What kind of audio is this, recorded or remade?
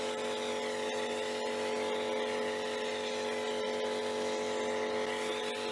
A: recorded